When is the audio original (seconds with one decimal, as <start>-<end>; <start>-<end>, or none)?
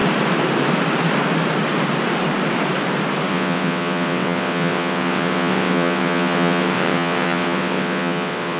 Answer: 0.0-3.3